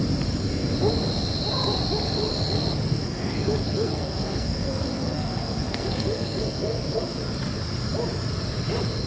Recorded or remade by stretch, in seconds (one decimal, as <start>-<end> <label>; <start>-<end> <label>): 0.0-2.9 recorded; 2.9-7.2 remade; 7.2-9.1 recorded